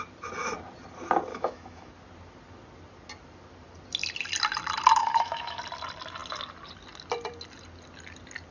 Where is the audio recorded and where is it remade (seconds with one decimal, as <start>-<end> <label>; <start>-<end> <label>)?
0.0-1.3 recorded; 1.3-1.9 remade; 1.9-5.0 recorded; 5.0-5.6 remade; 5.6-8.5 recorded